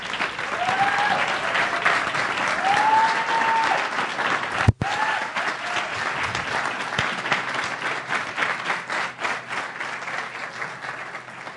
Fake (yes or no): no